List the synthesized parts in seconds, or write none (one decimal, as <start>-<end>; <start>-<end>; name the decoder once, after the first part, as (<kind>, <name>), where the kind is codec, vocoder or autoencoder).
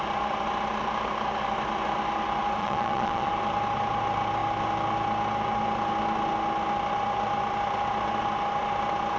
2.6-3.3 (vocoder, Vocos)